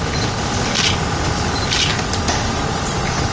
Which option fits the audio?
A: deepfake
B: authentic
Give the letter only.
B